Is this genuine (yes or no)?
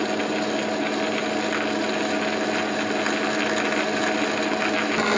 yes